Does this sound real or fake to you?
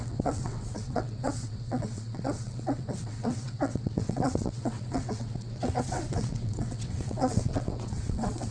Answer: fake